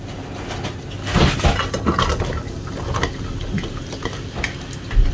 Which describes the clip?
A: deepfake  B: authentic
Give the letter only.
B